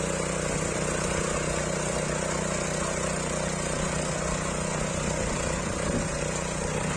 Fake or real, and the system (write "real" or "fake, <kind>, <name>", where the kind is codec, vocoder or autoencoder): real